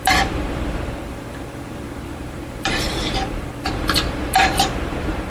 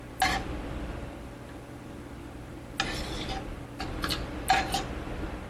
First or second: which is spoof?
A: first